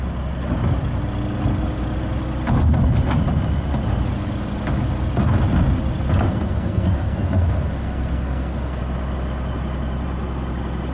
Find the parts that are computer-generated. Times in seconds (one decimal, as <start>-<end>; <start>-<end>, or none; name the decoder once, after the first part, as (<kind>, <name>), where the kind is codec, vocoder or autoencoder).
6.3-8.8 (codec, SNAC)